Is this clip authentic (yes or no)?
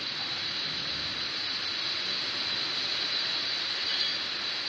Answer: yes